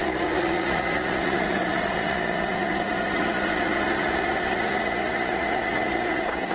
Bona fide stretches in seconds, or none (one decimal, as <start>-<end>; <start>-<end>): none